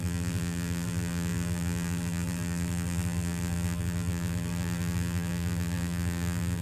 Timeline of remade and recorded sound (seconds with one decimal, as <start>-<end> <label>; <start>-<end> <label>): 0.0-6.6 remade